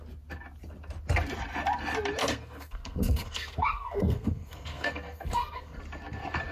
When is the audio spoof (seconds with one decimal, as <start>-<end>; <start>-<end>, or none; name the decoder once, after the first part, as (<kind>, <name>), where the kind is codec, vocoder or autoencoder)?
2.2-5.8 (codec, SNAC)